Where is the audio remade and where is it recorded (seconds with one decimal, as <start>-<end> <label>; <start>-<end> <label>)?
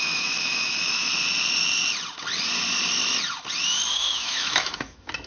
0.0-1.1 remade; 1.1-3.9 recorded; 3.9-5.3 remade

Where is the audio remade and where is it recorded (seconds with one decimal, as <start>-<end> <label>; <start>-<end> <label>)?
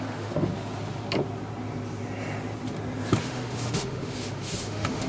0.0-0.5 remade; 0.5-3.2 recorded; 3.2-5.1 remade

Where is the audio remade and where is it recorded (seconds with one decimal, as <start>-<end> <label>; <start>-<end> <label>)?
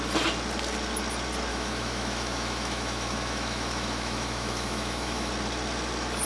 0.0-1.5 recorded; 1.5-5.3 remade; 5.3-6.3 recorded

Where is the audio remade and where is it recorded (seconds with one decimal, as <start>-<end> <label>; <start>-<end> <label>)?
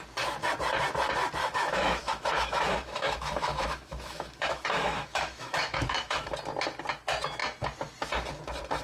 0.0-1.4 recorded; 1.4-6.3 remade; 6.3-8.8 recorded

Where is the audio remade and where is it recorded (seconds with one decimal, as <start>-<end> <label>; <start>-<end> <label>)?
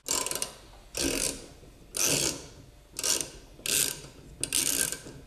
0.0-5.3 recorded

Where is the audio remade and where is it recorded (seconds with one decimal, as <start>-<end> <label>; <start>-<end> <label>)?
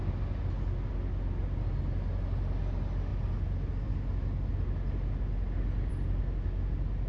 0.0-7.1 recorded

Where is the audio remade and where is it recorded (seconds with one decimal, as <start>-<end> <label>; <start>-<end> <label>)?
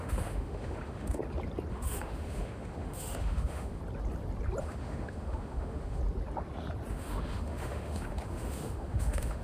0.0-1.2 remade; 1.2-1.7 recorded; 1.7-3.8 remade; 3.8-4.6 recorded; 4.6-6.0 remade; 6.0-6.9 recorded; 6.9-9.4 remade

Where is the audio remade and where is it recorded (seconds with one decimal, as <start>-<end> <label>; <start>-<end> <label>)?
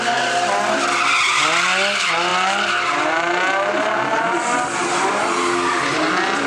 0.0-6.5 recorded